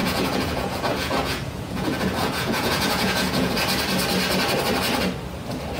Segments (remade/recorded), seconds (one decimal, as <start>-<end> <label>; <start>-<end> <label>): 0.0-3.5 remade; 3.5-5.8 recorded